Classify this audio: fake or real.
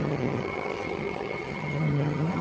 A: fake